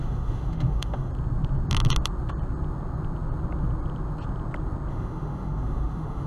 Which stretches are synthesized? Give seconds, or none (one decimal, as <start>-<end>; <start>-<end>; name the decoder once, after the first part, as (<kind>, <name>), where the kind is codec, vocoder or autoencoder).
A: 0.0-1.1 (autoencoder, DAC-VAE); 4.9-6.3